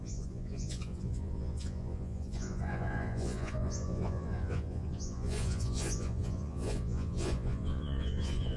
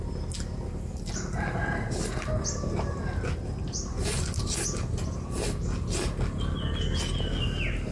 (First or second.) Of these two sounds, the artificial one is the first